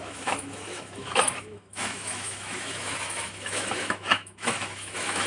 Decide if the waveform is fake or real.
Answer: fake